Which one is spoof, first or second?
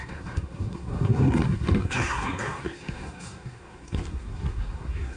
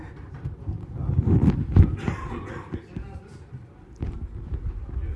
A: first